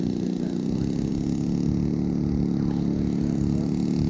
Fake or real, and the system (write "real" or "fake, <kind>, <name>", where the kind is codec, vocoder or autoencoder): real